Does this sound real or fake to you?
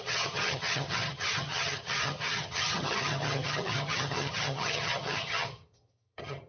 fake